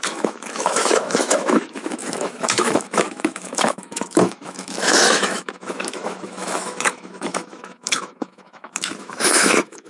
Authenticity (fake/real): fake